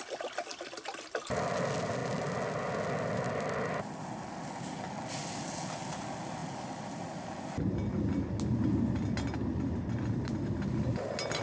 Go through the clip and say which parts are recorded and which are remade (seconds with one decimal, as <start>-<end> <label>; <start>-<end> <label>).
0.0-11.4 recorded